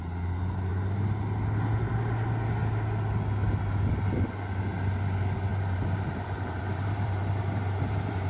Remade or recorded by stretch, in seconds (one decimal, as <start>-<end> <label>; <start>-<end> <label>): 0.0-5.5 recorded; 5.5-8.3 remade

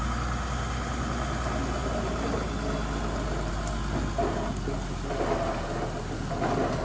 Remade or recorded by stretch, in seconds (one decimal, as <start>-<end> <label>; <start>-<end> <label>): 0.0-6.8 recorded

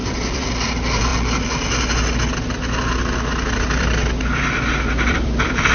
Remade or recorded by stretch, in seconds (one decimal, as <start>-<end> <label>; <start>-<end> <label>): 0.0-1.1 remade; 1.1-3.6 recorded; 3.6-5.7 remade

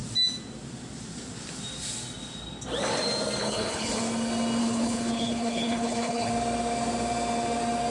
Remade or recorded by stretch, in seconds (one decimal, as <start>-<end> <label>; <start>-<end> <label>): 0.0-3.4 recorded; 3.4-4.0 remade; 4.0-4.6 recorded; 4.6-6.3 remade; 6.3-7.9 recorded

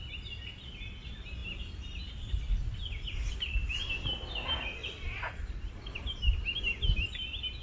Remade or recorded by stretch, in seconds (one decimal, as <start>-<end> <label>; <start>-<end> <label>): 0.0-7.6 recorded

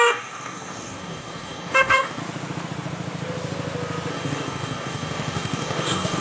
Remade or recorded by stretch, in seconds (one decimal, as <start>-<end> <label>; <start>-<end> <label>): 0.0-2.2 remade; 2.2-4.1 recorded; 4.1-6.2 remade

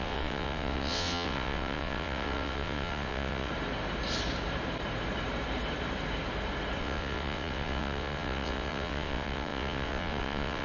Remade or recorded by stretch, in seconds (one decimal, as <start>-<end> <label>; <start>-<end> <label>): 0.0-3.5 remade; 3.5-6.8 recorded; 6.8-10.6 remade